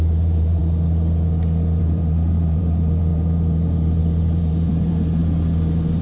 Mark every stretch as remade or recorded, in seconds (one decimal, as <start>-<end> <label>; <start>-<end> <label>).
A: 0.0-0.6 remade; 0.6-1.8 recorded; 1.8-5.2 remade; 5.2-6.0 recorded